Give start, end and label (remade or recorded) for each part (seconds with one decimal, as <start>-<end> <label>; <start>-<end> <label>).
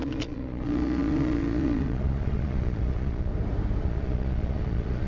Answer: 0.0-3.3 remade; 3.3-3.8 recorded; 3.8-5.1 remade